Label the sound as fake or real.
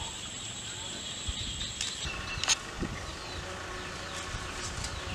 real